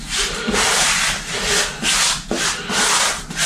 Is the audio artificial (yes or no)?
yes